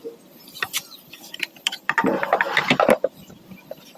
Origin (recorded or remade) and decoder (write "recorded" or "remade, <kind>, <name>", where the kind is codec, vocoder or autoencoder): remade, vocoder, BigVGAN v2